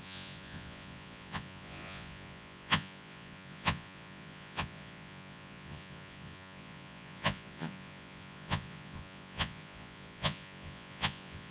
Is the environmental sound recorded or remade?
remade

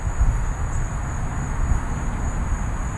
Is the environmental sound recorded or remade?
recorded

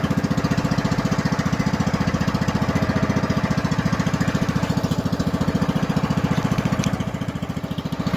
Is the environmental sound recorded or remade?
recorded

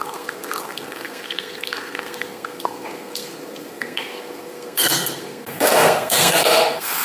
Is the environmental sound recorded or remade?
remade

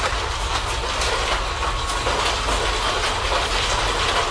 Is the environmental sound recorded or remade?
recorded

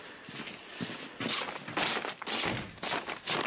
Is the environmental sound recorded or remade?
recorded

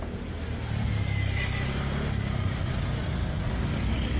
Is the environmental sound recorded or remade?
recorded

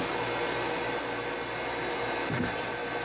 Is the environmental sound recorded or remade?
recorded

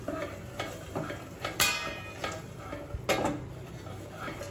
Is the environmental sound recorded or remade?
recorded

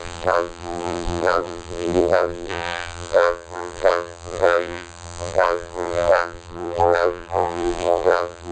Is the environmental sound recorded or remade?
remade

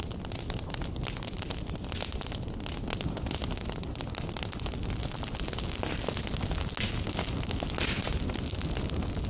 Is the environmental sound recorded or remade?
recorded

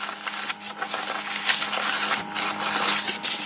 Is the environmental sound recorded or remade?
recorded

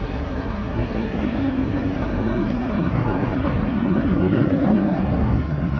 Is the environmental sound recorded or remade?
remade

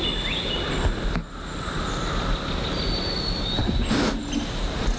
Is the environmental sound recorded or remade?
recorded